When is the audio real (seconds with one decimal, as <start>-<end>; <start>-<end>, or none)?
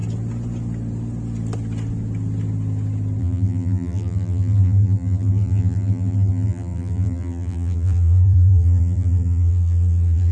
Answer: 0.0-3.2